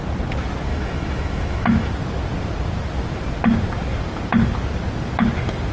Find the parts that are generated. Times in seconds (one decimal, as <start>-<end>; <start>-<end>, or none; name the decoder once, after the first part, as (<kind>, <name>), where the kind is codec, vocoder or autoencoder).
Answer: 0.7-1.9 (autoencoder, DAC-VAE)